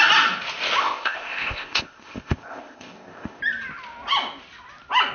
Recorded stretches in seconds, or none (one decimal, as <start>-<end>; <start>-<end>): 0.0-0.8; 3.4-5.1